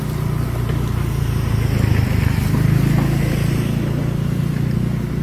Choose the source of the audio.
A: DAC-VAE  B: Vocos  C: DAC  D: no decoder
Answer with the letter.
D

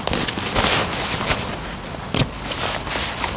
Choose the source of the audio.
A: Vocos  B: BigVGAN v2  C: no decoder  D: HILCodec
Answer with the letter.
C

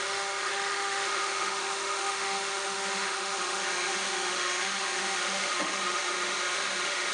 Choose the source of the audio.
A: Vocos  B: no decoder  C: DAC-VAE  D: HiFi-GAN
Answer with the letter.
C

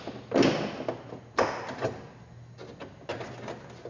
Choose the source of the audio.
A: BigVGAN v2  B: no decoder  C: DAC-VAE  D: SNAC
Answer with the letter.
B